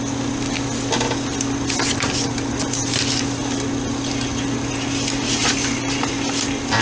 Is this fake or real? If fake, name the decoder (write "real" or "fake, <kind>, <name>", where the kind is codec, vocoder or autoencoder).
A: real